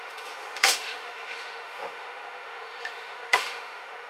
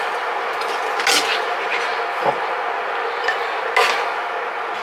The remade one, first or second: first